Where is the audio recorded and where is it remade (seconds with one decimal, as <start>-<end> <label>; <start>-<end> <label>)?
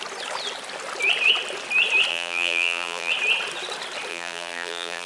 0.0-2.1 recorded; 2.1-3.1 remade; 3.1-4.1 recorded; 4.1-5.1 remade